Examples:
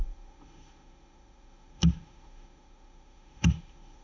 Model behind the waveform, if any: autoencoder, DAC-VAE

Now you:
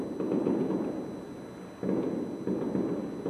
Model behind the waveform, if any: none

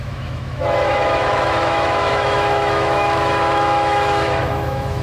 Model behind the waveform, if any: autoencoder, DAC-VAE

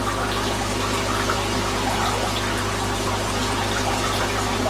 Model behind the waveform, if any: none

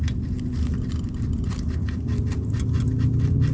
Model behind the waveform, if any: none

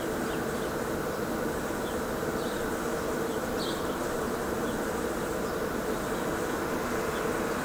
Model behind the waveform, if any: none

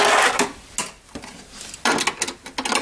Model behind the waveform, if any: none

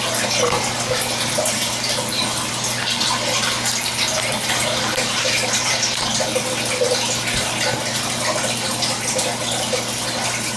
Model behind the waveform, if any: none